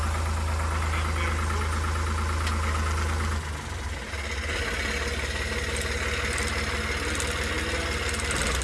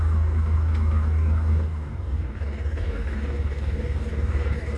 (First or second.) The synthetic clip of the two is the second